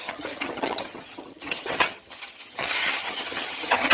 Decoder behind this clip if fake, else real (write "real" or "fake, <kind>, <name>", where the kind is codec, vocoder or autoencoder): fake, vocoder, HiFi-GAN